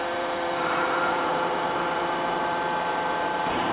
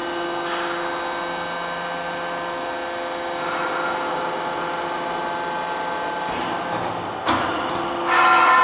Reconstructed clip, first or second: first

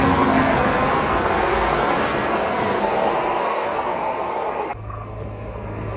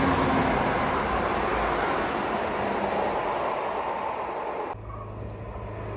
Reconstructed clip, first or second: first